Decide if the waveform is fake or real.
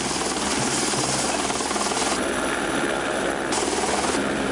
real